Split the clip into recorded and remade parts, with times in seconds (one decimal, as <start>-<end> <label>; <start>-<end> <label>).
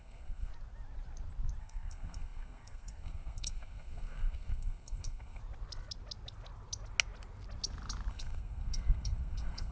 0.0-0.5 remade; 0.5-1.6 recorded; 1.6-5.4 remade; 5.4-8.1 recorded; 8.1-9.7 remade